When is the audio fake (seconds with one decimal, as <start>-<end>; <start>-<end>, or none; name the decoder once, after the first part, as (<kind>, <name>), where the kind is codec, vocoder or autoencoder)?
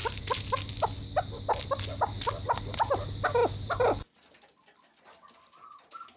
none